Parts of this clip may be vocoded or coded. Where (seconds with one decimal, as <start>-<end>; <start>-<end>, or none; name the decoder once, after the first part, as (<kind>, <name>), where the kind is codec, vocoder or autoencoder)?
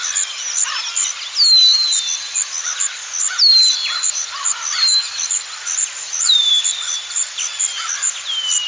none